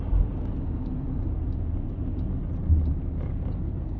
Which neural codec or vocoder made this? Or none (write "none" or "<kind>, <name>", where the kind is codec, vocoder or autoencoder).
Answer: none